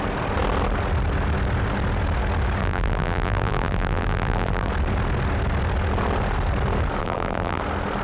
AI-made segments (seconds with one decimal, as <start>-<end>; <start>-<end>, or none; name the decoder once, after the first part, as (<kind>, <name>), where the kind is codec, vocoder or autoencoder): 2.6-4.7 (vocoder, BigVGAN v2); 7.0-7.6